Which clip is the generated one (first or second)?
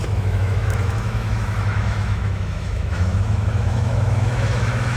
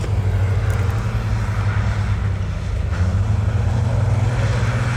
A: first